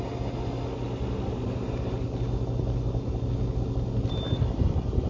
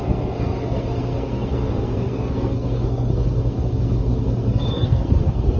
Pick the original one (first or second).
first